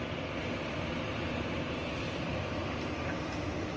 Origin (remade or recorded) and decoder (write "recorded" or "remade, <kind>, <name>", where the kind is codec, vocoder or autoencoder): recorded